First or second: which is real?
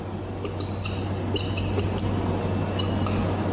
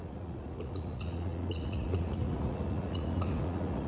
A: first